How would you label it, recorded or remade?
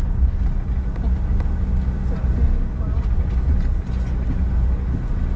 recorded